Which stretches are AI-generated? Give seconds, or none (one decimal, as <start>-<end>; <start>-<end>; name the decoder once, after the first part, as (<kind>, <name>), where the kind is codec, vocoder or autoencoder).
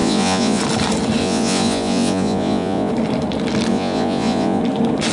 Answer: 0.0-0.6 (vocoder, Vocos); 1.2-2.9; 3.7-4.6